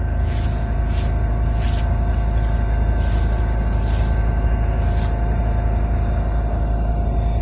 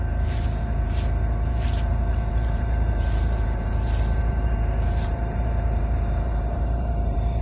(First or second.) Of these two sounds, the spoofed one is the second